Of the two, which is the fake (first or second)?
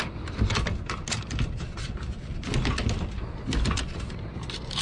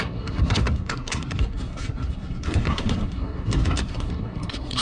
second